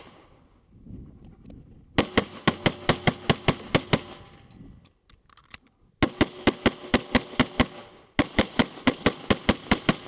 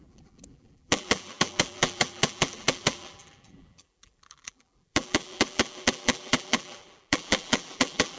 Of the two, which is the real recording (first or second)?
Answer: first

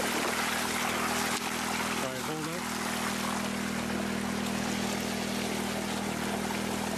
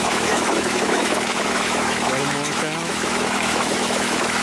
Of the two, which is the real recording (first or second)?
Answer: first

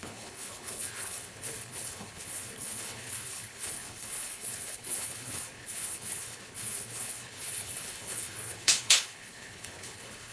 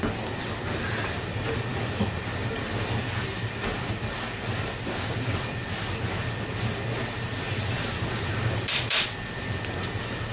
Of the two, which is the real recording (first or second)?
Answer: second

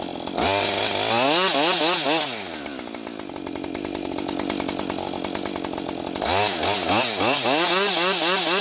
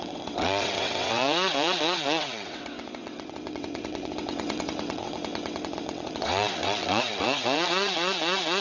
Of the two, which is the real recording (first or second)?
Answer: first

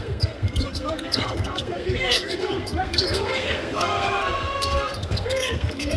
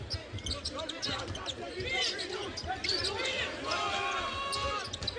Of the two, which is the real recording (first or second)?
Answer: second